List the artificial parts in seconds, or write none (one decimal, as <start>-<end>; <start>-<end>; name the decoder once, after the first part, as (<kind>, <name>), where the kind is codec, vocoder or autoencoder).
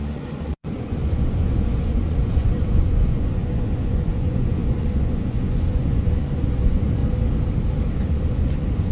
0.0-7.0 (vocoder, Vocos); 7.9-8.9